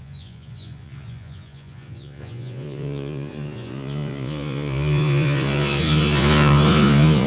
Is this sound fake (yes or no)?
yes